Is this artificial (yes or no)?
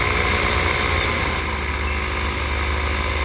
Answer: no